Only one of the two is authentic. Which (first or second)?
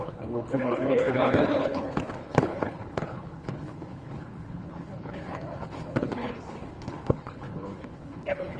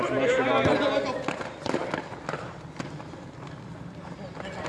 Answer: second